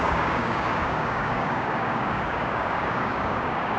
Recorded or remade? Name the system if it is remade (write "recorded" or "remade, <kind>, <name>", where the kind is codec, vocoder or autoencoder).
remade, codec, DAC